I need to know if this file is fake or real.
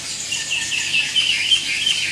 real